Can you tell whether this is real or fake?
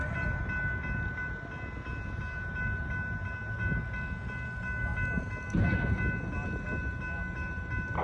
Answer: real